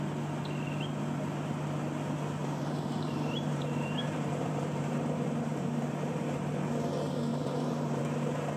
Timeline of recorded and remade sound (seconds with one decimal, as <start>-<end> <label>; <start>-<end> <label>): 0.0-2.4 recorded; 2.4-6.5 remade; 6.5-7.3 recorded; 7.3-8.0 remade; 8.0-8.6 recorded